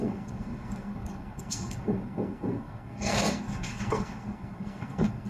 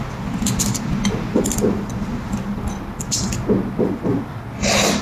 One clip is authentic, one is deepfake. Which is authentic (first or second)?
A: second